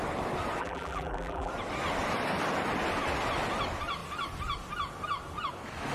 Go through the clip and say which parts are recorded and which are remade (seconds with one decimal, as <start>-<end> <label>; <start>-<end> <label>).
0.0-0.6 recorded; 0.6-1.5 remade; 1.5-5.9 recorded